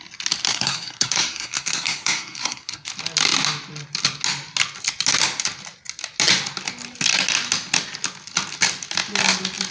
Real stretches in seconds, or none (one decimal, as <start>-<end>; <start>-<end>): 0.0-0.5; 2.9-9.7

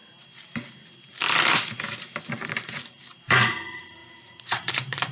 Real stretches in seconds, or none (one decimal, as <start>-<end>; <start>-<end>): 0.0-2.3

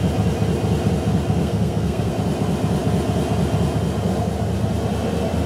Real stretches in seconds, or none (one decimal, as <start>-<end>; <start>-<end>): 0.0-1.4; 2.1-5.5

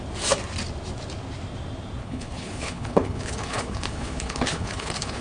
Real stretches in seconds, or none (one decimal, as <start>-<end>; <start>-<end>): 0.0-2.0